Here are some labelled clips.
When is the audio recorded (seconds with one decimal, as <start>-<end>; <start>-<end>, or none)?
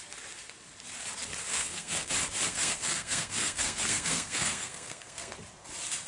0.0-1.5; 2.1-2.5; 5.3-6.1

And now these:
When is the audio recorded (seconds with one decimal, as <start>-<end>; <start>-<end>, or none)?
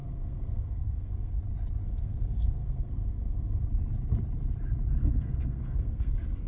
1.4-1.8; 3.6-5.0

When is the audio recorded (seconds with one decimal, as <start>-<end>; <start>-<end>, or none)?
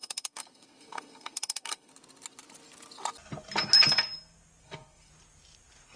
1.9-4.6; 5.1-6.0